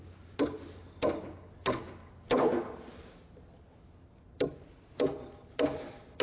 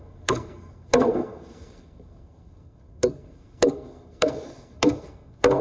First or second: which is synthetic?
second